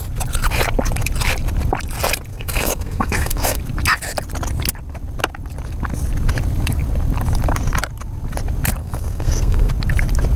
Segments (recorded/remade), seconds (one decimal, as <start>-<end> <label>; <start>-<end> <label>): 0.0-2.3 recorded; 2.3-3.6 remade; 3.6-8.8 recorded; 8.8-9.7 remade; 9.7-10.4 recorded